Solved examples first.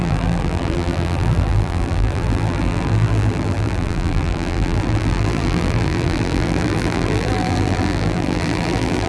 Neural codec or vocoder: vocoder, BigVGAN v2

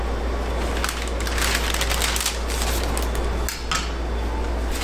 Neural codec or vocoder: none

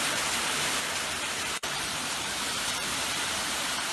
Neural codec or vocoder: vocoder, BigVGAN v2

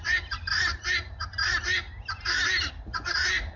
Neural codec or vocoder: none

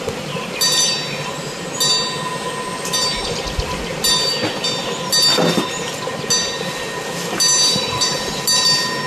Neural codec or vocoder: none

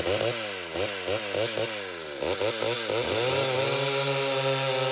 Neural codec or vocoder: none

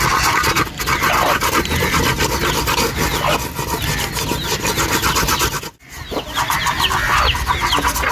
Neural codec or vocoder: none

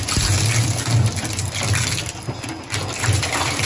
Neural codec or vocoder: none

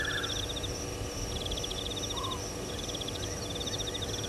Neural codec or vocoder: none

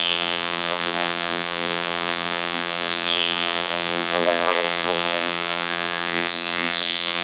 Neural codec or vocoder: vocoder, BigVGAN v2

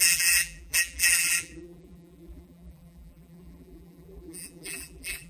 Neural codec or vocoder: vocoder, BigVGAN v2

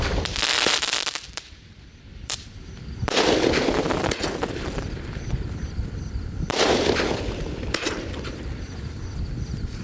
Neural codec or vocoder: vocoder, BigVGAN v2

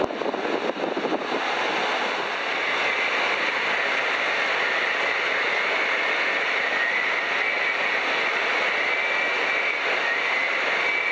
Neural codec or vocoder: none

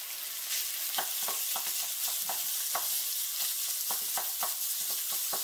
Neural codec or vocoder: none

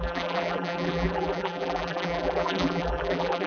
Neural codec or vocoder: vocoder, BigVGAN v2